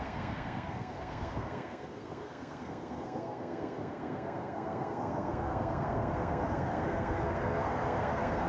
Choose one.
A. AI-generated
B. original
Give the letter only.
A